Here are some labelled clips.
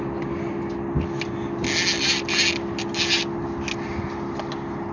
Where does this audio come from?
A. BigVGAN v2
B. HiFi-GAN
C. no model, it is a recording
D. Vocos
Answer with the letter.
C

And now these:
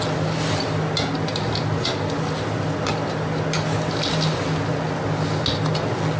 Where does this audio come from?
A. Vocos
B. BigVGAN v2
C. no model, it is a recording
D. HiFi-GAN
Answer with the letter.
C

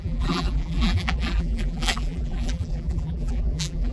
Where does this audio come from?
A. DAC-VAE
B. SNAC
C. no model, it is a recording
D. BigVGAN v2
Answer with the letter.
D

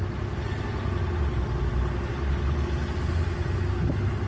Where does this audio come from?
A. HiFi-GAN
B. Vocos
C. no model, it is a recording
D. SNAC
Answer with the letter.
C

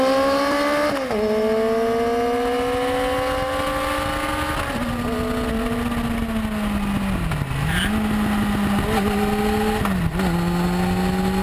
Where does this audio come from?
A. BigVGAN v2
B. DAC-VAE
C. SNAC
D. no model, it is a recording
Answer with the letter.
D